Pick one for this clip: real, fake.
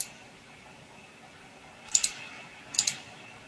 real